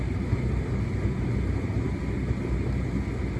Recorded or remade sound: recorded